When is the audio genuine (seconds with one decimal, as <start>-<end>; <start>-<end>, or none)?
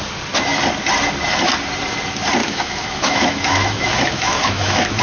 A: 0.0-2.4